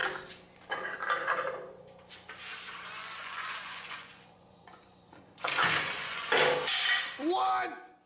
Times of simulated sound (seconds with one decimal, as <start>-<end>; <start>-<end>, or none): 2.9-6.3